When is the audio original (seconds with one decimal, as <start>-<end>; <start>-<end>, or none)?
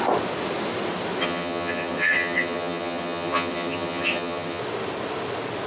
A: 0.0-1.2; 4.6-5.7